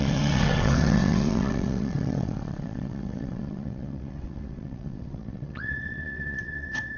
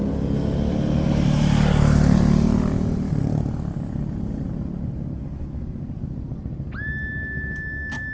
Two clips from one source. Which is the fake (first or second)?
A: first